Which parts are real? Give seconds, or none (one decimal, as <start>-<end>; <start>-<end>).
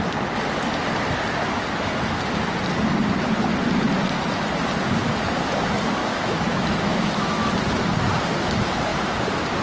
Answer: 0.0-6.0; 7.5-9.6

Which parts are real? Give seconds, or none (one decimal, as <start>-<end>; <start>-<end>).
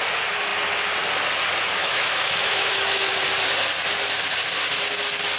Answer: 0.0-1.8; 3.1-5.4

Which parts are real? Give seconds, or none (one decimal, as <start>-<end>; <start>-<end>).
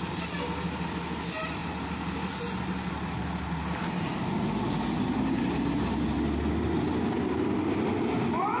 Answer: 0.0-8.6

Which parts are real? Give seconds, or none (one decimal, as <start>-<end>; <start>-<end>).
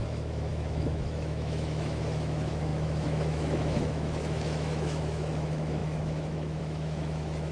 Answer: none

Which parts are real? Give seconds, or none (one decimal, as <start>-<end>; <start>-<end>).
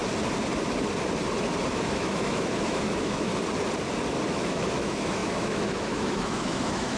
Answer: 0.0-1.7; 3.3-4.3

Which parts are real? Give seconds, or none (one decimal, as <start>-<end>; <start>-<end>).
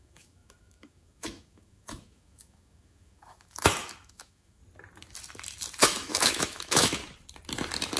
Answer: 4.6-5.8; 7.0-8.0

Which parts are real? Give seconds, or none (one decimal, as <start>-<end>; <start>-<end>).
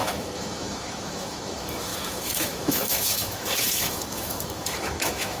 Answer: none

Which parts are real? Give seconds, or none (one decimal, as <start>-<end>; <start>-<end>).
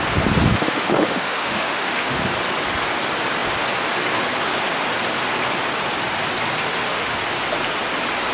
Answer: 0.0-0.5; 2.2-6.7; 7.2-8.3